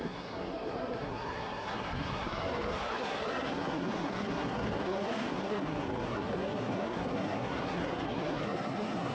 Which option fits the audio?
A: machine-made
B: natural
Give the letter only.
A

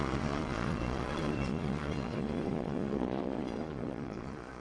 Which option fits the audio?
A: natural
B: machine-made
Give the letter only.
B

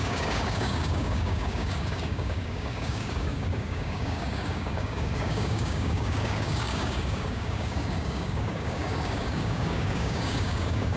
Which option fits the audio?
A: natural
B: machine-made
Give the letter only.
B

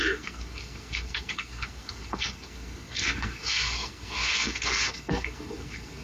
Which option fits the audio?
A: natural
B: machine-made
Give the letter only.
B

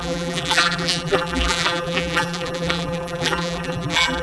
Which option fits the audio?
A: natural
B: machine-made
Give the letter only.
B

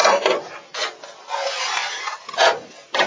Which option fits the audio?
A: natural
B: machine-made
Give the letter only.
A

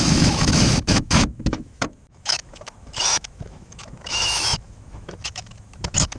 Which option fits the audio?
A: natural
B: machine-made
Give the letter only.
B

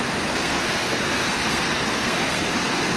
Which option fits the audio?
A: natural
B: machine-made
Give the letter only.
B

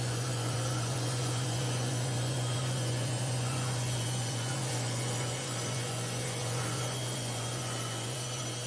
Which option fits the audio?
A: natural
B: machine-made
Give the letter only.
B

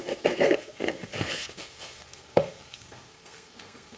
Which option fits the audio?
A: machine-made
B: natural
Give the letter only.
A